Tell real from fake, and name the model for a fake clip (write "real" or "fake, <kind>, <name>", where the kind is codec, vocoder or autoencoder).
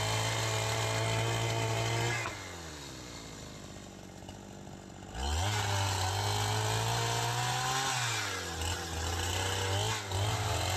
real